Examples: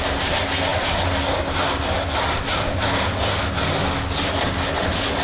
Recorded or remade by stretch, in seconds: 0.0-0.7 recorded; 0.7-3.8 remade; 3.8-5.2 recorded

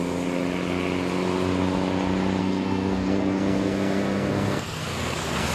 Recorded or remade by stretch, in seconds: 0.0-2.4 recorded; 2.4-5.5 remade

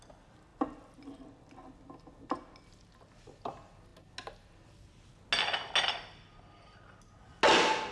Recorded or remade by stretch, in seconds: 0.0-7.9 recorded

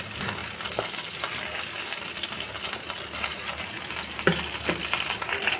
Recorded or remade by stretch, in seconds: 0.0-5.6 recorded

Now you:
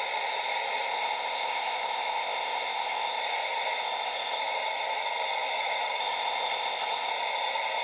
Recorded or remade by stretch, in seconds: 0.0-0.9 recorded; 0.9-3.2 remade; 3.2-3.8 recorded; 3.8-4.4 remade; 4.4-6.0 recorded; 6.0-7.1 remade; 7.1-7.8 recorded

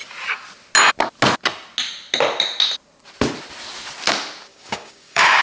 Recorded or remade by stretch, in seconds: 0.0-4.5 recorded; 4.5-5.4 remade